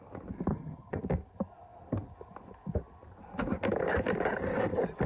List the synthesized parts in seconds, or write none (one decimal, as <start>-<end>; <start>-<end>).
0.5-1.0